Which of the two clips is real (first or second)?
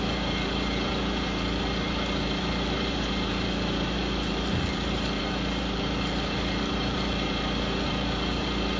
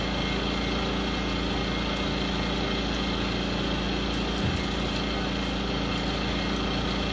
second